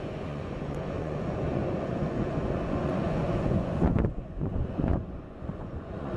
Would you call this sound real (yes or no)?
no